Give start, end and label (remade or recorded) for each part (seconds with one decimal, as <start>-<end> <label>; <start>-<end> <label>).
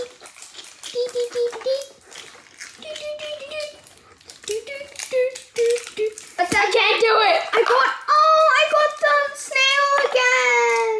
0.0-11.0 recorded